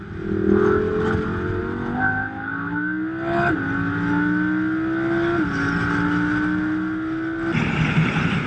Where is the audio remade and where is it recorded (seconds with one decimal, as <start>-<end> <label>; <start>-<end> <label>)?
0.0-8.5 recorded